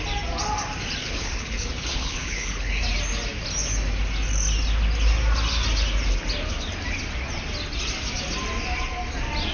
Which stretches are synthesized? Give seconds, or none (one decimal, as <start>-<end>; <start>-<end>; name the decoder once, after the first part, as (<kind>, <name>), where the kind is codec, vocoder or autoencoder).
1.0-2.8 (codec, HILCodec)